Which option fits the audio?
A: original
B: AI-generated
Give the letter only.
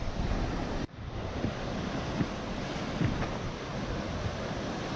A